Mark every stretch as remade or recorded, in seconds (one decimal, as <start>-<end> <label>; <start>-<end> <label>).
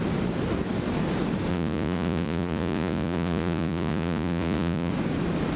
0.0-1.5 recorded; 1.5-4.9 remade; 4.9-5.6 recorded